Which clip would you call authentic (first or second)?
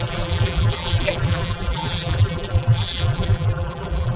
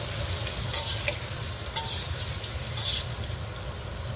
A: second